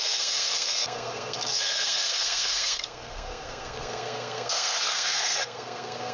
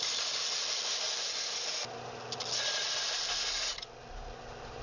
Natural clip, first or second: second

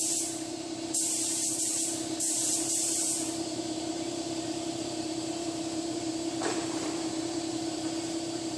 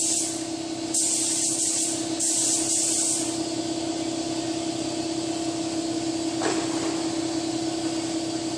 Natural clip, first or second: second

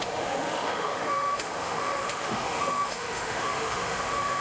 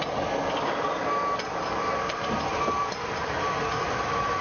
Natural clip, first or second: second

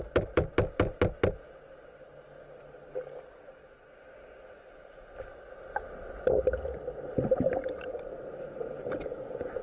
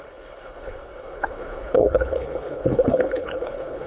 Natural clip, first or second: first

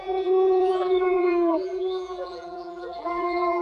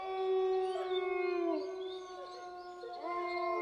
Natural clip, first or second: second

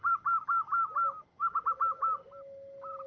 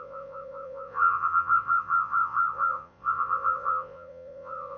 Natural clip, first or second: first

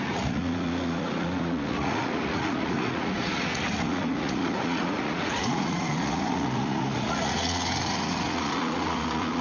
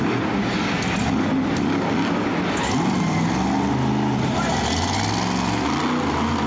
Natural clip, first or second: second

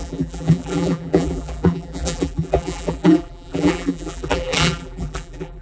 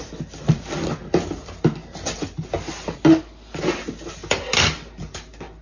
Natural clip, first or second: second